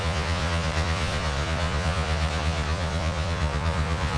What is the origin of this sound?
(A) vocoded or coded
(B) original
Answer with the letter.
A